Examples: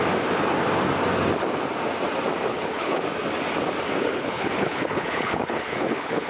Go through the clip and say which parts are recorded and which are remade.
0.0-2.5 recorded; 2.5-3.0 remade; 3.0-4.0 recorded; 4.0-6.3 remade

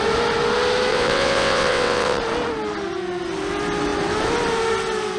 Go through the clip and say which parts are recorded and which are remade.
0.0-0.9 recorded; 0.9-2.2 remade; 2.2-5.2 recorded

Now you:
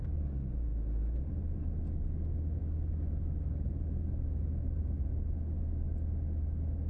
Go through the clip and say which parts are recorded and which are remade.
0.0-6.9 recorded

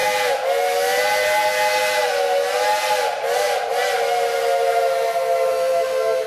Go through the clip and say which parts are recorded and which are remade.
0.0-5.5 recorded; 5.5-6.3 remade